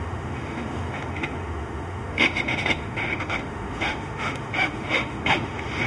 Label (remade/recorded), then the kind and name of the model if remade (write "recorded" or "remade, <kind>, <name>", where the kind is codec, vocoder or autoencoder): remade, autoencoder, DAC-VAE